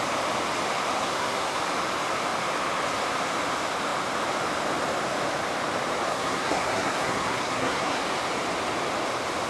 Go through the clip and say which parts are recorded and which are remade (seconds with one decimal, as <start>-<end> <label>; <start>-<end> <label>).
0.0-1.0 recorded; 1.0-1.6 remade; 1.6-6.1 recorded; 6.1-8.0 remade; 8.0-9.5 recorded